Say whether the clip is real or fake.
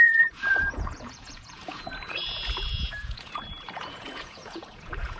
fake